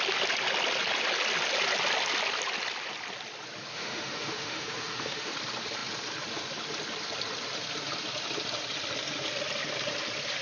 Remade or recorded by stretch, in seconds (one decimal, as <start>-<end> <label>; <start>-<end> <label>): 0.0-3.7 recorded; 3.7-5.3 remade; 5.3-10.4 recorded